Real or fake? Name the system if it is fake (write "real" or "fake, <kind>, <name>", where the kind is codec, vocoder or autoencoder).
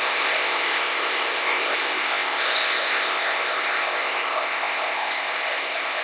fake, codec, ZipCodec